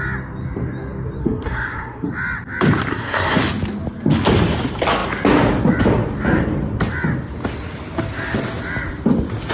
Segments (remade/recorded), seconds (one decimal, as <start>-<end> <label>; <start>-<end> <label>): 0.0-1.2 recorded; 1.2-2.1 remade; 2.1-2.9 recorded; 2.9-3.4 remade; 3.4-9.5 recorded